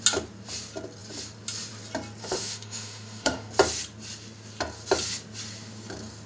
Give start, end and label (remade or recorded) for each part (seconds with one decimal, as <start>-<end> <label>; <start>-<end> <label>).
0.0-2.2 recorded; 2.2-3.5 remade; 3.5-6.3 recorded